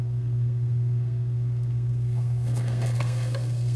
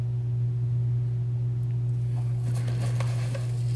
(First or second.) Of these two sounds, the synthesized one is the first